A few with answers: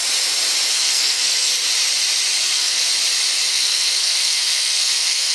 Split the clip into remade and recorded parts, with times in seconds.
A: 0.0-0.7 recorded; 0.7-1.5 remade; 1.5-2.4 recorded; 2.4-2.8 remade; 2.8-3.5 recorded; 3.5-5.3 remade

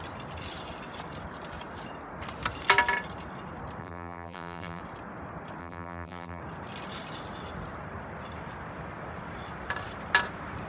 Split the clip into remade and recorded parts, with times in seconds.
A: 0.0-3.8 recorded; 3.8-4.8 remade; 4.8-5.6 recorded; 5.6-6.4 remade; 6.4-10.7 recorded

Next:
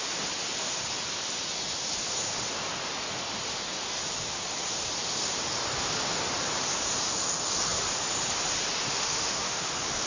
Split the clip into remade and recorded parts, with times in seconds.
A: 0.0-8.9 recorded; 8.9-9.7 remade; 9.7-10.1 recorded

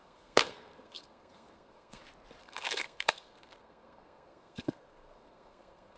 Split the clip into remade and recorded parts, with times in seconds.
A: 0.0-2.0 remade; 2.0-2.4 recorded; 2.4-6.0 remade

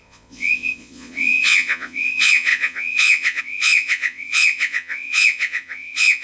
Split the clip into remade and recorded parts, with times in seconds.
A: 0.0-6.2 remade

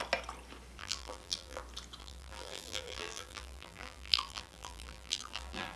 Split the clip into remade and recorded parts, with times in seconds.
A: 0.0-0.8 recorded; 0.8-1.6 remade; 1.6-2.0 recorded; 2.0-5.8 remade